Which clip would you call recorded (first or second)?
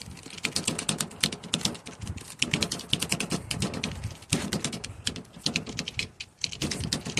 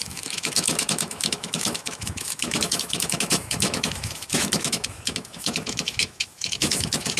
first